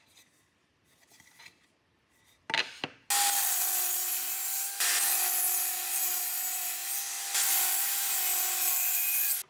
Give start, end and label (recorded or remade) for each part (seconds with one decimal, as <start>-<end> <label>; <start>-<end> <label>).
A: 0.0-9.5 recorded